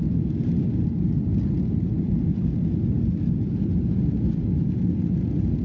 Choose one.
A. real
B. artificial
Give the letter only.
A